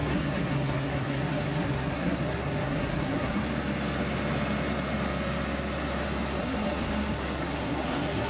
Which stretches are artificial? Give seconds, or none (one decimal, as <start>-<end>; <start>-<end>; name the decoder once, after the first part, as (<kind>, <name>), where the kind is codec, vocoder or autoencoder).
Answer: 0.0-3.4 (codec, SNAC); 6.4-8.3